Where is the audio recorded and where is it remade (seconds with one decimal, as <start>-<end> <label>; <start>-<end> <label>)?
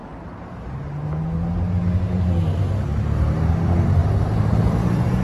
0.0-4.0 recorded; 4.0-4.8 remade; 4.8-5.2 recorded